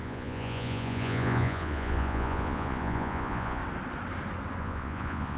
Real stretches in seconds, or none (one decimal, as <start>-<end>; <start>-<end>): 3.6-4.6